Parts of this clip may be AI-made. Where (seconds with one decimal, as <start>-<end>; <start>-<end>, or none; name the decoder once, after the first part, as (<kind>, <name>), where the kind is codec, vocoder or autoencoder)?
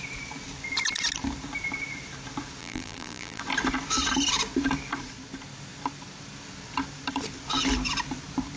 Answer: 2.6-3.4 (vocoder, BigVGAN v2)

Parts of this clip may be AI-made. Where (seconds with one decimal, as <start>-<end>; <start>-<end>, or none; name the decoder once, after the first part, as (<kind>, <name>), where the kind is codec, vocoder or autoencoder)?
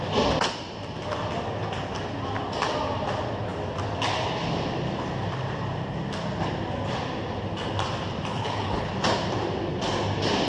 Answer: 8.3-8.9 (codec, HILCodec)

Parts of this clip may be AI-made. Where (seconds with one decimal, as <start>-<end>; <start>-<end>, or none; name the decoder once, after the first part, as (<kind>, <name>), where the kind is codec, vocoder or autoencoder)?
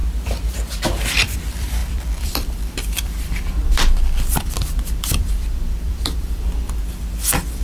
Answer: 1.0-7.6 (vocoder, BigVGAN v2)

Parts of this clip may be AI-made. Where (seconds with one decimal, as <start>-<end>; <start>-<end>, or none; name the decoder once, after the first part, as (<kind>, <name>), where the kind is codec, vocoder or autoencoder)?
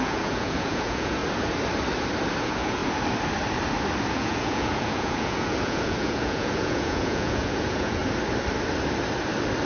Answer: 0.0-1.2 (vocoder, Vocos); 2.4-2.8; 4.1-8.0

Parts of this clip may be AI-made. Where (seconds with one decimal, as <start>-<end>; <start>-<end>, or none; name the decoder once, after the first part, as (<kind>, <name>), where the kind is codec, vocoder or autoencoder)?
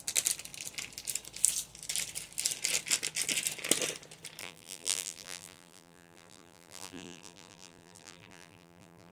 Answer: 4.4-9.1 (vocoder, BigVGAN v2)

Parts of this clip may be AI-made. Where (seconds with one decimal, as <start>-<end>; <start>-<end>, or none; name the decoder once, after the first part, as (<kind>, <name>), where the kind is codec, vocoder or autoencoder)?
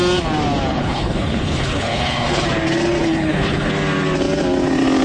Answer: 0.7-2.4 (codec, HILCodec); 3.0-3.7